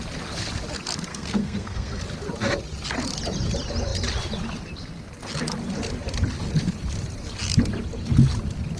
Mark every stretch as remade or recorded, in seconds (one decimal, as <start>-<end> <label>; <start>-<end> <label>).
0.0-1.1 recorded; 1.1-2.0 remade; 2.0-8.8 recorded